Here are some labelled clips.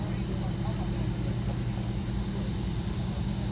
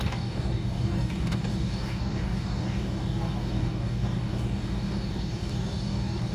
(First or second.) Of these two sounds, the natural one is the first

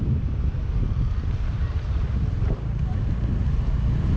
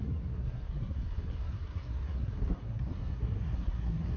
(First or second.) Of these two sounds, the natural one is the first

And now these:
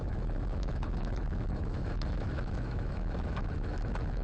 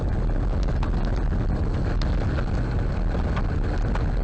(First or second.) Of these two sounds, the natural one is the second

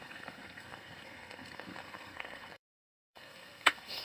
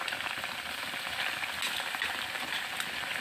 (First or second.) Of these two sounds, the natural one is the second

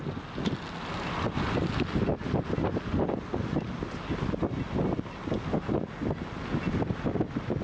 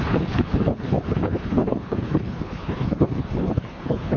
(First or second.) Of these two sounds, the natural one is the first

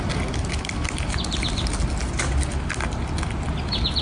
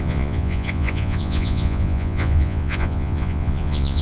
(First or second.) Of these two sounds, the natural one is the first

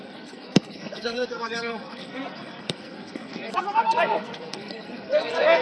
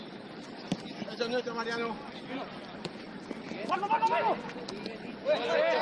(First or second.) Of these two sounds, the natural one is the second